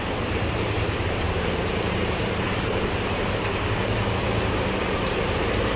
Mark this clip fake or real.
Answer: fake